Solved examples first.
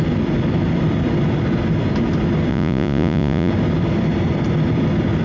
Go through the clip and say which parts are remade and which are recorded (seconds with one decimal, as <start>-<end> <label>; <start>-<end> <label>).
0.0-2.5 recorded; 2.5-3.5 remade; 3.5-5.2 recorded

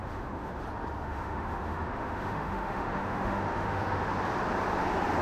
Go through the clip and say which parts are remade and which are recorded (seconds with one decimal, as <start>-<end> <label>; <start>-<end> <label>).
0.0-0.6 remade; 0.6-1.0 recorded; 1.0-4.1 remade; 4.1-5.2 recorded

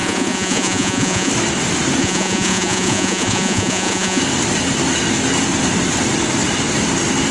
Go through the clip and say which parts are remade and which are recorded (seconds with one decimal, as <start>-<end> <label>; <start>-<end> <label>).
0.0-1.3 remade; 1.3-2.0 recorded; 2.0-4.2 remade; 4.2-7.3 recorded

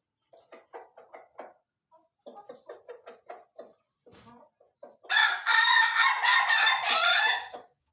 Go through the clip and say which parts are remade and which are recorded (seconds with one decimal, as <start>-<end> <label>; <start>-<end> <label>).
0.0-5.2 recorded; 5.2-5.7 remade; 5.7-7.1 recorded; 7.1-7.9 remade

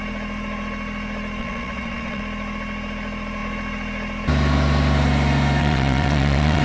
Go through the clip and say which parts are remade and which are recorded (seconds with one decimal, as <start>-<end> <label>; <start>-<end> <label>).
0.0-1.4 recorded; 1.4-2.2 remade; 2.2-5.6 recorded; 5.6-6.6 remade

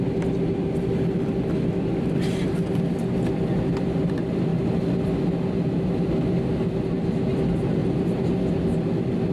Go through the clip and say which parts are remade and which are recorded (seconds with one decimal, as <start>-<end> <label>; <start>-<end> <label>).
0.0-9.3 recorded

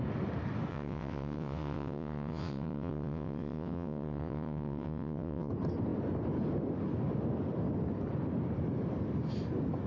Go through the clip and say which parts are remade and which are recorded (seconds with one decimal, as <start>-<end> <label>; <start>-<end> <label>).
0.0-0.7 recorded; 0.7-5.5 remade; 5.5-9.9 recorded

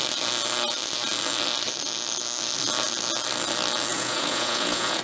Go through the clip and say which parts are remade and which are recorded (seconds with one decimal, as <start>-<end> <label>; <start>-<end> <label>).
0.0-3.9 recorded; 3.9-5.0 remade